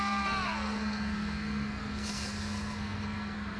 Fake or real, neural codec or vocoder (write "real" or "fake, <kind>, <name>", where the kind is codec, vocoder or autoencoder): fake, codec, SNAC